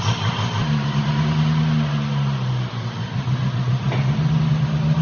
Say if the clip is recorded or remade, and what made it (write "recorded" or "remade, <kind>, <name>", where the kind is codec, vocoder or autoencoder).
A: recorded